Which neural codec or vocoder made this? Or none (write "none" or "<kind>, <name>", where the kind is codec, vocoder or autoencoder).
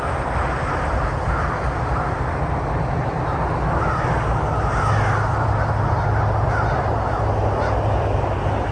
none